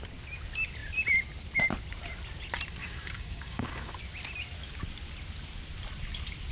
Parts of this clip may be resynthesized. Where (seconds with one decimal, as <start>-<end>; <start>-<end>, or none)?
2.8-3.9